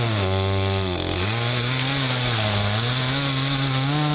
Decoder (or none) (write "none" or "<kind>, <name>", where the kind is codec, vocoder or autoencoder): none